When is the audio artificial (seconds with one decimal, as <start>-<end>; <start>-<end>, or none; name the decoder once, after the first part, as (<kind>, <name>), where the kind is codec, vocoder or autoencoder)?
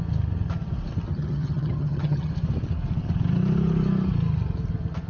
1.1-2.3 (vocoder, HiFi-GAN)